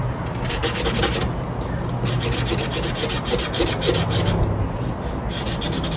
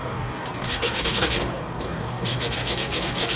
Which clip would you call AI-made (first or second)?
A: second